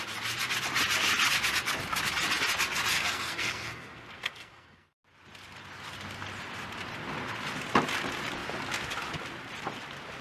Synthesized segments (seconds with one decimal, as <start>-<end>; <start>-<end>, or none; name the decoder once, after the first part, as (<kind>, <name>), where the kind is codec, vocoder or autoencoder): 2.9-5.0 (codec, SNAC)